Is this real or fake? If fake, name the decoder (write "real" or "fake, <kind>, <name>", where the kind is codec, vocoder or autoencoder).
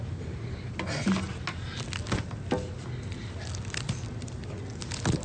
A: real